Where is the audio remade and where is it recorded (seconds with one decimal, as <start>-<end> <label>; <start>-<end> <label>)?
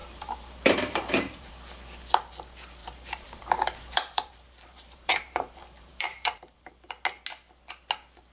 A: 0.0-1.5 remade; 1.5-2.8 recorded; 2.8-6.7 remade; 6.7-8.3 recorded